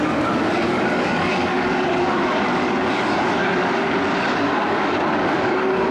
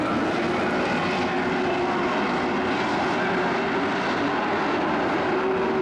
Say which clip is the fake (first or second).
first